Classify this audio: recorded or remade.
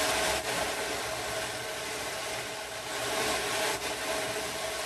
recorded